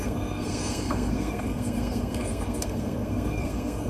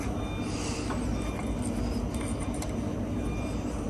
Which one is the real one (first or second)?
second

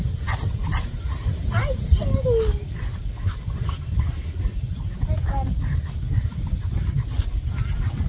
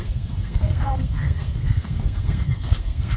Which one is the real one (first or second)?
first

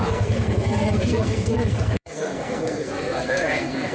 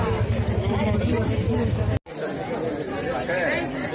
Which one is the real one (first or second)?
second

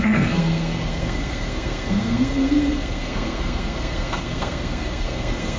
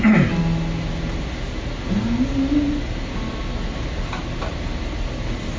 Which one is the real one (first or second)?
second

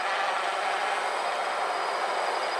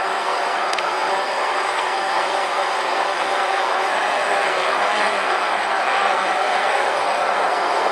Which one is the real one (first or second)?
first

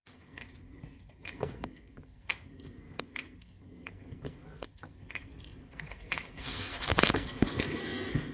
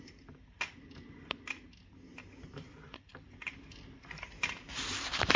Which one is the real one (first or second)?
second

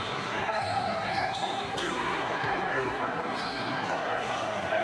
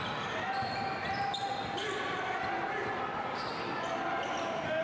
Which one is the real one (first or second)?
second